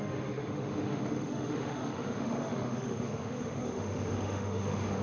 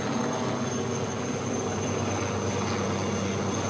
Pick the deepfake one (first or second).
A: first